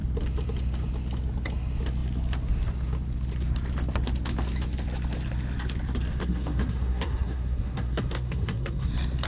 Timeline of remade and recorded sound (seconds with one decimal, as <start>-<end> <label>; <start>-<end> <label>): 0.0-6.2 recorded; 6.2-8.9 remade; 8.9-9.3 recorded